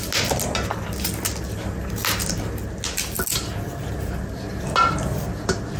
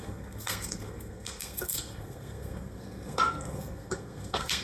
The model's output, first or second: second